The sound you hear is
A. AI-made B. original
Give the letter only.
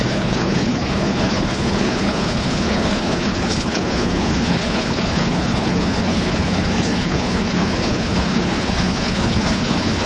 A